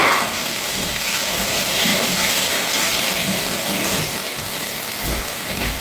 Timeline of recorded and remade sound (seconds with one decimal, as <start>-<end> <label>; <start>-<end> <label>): 0.0-5.8 remade